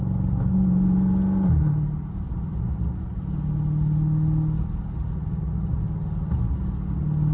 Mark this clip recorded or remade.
recorded